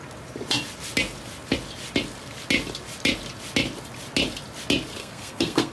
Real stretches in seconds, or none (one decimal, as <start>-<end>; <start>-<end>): 0.0-5.0